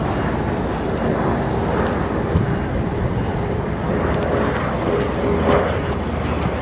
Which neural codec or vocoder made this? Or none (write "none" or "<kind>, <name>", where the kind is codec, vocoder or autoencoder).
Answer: none